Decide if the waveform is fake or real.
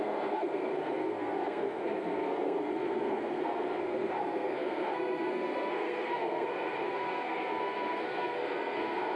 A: fake